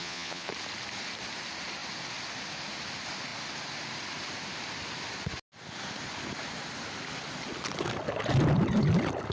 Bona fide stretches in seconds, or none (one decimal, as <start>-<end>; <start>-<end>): 0.5-9.3